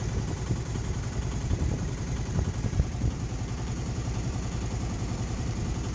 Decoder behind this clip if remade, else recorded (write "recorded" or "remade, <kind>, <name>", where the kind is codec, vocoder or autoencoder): remade, vocoder, BigVGAN v2